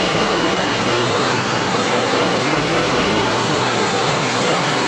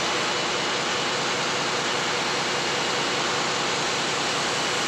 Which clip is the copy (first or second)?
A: first